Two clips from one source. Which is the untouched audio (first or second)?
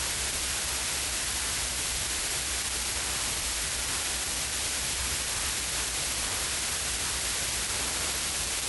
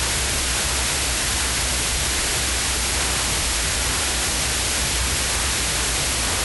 second